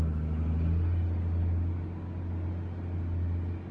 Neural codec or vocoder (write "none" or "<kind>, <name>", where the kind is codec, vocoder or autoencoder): none